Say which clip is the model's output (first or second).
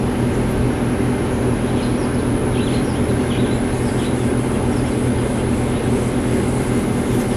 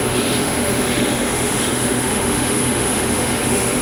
second